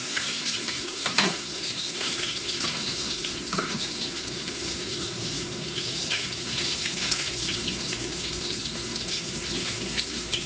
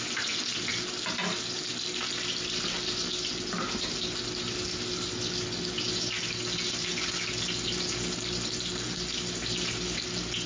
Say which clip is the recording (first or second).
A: second